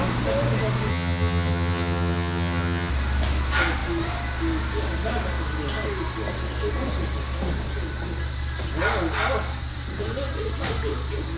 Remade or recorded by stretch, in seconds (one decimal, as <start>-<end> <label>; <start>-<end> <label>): 0.0-0.9 recorded; 0.9-2.9 remade; 2.9-11.4 recorded